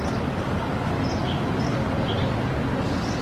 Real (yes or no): yes